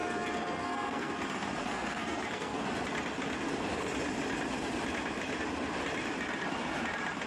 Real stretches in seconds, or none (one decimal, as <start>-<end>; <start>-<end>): 1.1-1.6; 2.6-7.3